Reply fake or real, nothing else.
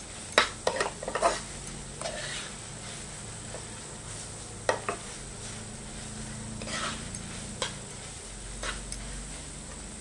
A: real